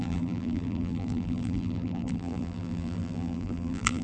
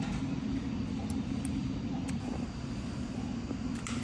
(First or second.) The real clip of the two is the second